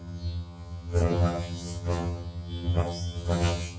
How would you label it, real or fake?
fake